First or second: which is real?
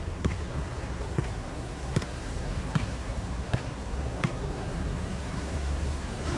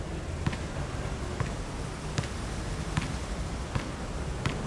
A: second